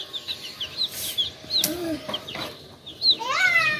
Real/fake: real